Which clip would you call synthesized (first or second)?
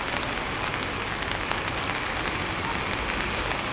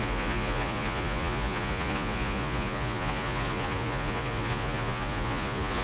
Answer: second